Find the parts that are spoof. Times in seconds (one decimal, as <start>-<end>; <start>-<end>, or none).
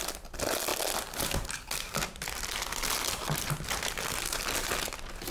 none